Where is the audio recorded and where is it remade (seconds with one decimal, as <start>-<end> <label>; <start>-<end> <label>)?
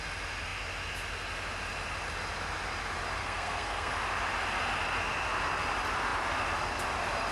0.0-3.2 recorded; 3.2-3.9 remade; 3.9-7.3 recorded